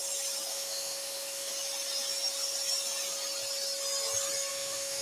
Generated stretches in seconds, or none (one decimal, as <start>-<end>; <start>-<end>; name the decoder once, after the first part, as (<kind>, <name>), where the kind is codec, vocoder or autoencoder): 0.5-1.5 (autoencoder, DAC-VAE); 4.5-5.0